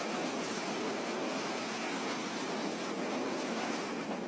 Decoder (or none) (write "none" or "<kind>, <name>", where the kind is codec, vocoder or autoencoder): none